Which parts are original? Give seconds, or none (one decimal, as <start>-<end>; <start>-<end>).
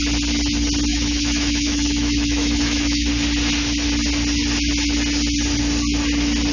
0.0-0.9; 3.1-6.5